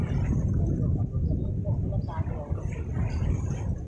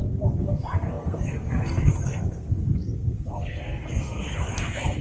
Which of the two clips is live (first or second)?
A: first